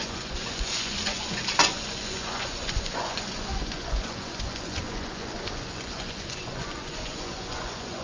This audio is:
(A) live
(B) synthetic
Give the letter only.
B